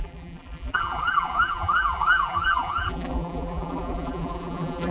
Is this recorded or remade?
remade